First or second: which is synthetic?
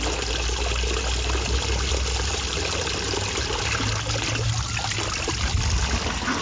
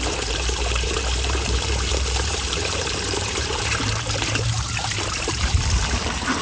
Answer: second